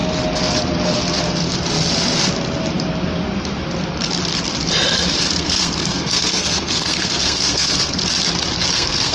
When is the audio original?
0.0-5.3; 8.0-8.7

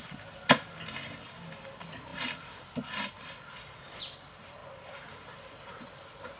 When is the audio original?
0.0-6.4

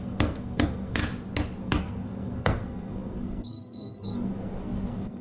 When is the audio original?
1.0-1.6